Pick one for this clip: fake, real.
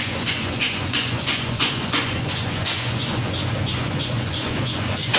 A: fake